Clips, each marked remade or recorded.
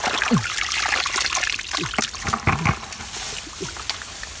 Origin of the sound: recorded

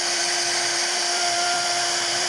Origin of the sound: remade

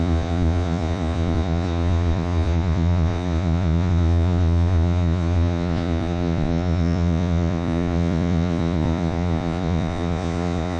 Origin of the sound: remade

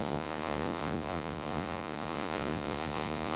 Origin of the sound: remade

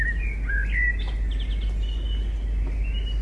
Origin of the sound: recorded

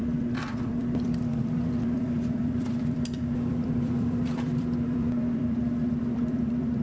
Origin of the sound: remade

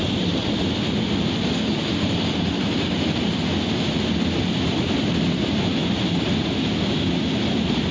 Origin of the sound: recorded